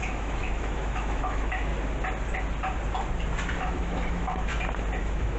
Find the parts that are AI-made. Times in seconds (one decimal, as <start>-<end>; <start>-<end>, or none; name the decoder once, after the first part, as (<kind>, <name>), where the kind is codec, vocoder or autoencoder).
0.0-1.7 (autoencoder, DAC-VAE); 3.6-4.5; 5.0-5.4